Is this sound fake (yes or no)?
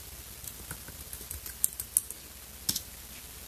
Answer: no